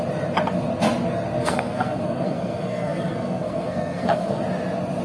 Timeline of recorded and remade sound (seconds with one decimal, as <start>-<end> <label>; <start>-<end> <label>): 0.0-1.4 recorded; 1.4-4.4 remade; 4.4-5.0 recorded